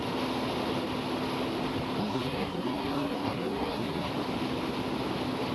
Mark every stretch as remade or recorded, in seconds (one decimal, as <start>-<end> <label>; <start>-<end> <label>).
0.0-2.0 recorded; 2.0-4.1 remade; 4.1-5.5 recorded